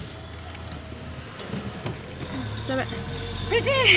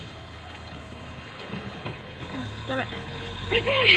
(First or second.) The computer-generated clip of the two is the second